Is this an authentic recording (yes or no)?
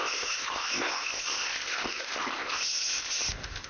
no